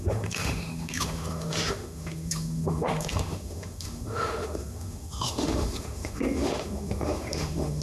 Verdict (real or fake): fake